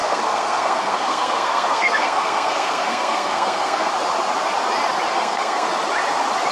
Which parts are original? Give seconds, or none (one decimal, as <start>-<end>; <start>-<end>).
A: 3.9-5.1; 5.7-6.5